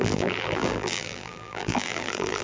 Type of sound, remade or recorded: remade